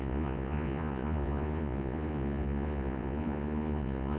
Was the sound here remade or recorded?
remade